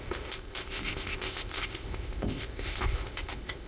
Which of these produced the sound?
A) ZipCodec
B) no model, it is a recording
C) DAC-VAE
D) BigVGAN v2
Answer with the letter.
A